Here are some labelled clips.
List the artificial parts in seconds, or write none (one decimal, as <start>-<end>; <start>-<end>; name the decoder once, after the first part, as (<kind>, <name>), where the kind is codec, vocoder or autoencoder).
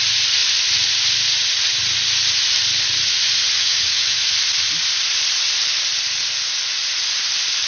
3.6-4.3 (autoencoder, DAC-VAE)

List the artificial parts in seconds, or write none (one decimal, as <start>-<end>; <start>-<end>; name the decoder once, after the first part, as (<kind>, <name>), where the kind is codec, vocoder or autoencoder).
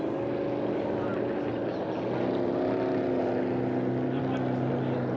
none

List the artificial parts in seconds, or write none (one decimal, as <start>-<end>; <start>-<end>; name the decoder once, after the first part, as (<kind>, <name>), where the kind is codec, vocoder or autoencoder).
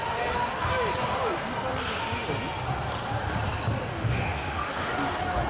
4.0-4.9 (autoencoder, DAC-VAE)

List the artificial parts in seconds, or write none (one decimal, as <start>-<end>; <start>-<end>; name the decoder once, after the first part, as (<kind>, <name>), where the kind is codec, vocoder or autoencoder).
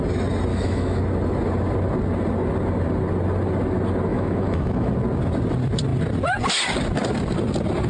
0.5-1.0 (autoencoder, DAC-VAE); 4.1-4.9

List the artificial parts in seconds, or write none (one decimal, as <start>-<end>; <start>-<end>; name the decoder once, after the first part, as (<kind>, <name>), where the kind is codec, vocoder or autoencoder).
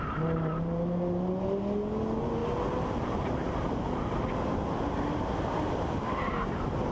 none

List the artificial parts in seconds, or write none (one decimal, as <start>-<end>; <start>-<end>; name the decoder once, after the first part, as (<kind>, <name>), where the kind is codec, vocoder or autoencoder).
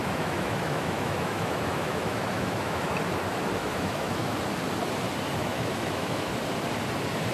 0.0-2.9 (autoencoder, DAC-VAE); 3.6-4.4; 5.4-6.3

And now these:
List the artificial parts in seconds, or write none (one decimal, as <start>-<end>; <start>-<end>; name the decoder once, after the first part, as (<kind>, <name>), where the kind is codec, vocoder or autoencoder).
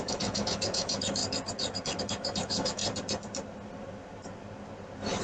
0.0-1.2 (autoencoder, DAC-VAE); 2.0-2.8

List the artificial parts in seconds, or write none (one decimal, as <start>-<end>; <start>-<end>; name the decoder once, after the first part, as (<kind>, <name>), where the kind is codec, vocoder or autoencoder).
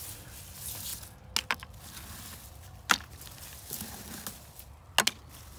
none